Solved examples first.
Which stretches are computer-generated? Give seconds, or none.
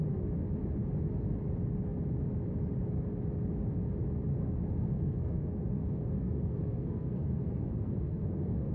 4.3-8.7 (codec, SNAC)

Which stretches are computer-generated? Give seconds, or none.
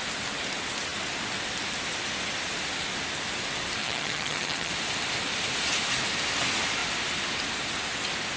3.8-4.7 (vocoder, HiFi-GAN)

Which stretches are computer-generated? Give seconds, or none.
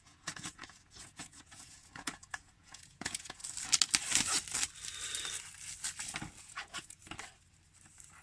0.0-3.4 (vocoder, Vocos); 6.4-7.0